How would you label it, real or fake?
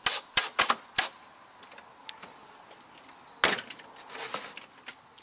real